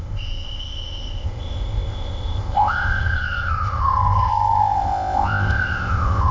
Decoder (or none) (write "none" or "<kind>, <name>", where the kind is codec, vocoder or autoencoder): codec, ZipCodec